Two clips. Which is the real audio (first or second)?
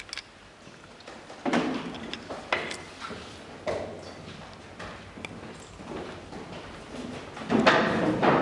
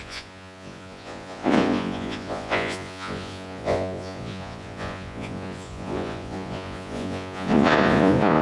first